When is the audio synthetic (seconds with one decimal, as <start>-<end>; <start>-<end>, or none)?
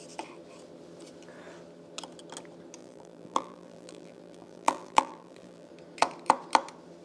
2.8-5.7